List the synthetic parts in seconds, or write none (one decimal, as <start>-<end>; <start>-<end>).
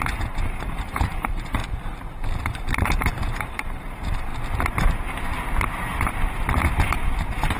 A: 0.0-1.6; 2.4-4.3